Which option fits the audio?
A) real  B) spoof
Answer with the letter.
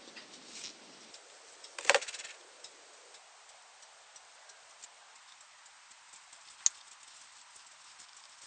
A